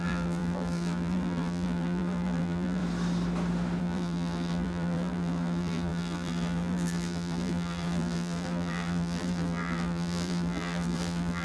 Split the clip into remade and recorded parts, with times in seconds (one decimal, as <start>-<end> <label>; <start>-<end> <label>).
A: 0.0-2.8 remade; 2.8-3.8 recorded; 3.8-11.4 remade